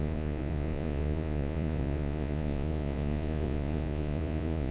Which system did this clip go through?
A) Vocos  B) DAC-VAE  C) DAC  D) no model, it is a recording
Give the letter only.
A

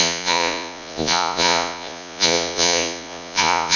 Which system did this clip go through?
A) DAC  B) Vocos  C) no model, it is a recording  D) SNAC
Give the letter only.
B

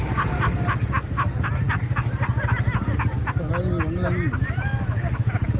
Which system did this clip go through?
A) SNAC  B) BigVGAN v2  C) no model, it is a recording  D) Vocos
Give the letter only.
C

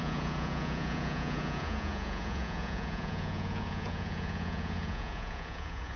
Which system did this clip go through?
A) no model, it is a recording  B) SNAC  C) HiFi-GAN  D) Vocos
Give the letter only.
D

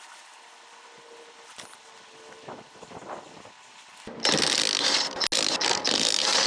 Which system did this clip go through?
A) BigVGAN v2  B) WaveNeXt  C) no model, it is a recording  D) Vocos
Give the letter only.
C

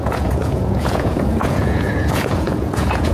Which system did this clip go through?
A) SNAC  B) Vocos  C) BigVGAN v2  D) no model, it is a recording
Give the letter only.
B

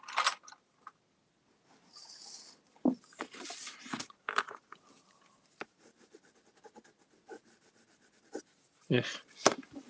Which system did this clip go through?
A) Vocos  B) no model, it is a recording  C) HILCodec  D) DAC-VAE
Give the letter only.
B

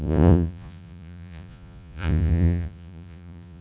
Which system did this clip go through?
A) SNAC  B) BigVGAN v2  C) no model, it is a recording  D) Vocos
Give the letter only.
D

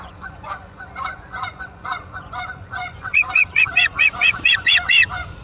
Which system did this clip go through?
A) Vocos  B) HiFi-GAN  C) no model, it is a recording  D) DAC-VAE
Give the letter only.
A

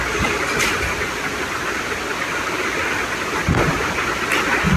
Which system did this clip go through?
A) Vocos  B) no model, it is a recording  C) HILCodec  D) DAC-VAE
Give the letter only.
B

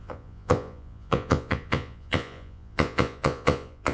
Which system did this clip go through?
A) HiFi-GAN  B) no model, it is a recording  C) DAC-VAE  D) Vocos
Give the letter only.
D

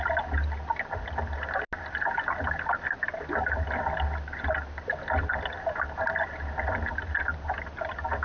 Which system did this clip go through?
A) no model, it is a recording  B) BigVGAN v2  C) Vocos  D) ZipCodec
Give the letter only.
A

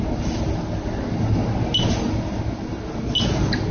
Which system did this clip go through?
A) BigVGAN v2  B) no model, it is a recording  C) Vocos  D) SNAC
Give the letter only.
B